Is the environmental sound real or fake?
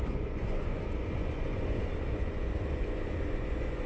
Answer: fake